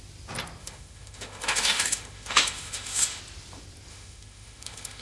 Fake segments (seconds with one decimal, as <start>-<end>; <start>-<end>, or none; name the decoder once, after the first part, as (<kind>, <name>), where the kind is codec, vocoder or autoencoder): 0.6-3.2 (autoencoder, DAC-VAE); 3.9-5.0